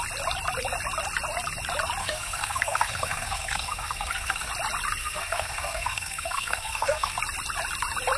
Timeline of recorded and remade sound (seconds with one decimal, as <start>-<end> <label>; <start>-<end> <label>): 0.0-2.0 recorded; 2.0-4.5 remade; 4.5-5.0 recorded; 5.0-7.2 remade; 7.2-8.2 recorded